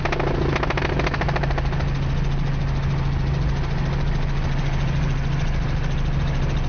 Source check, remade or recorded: recorded